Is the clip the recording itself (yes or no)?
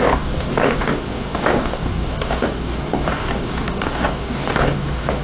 no